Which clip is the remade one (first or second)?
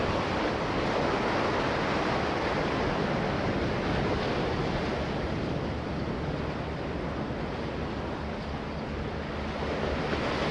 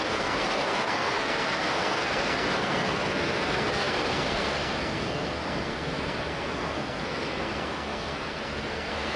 second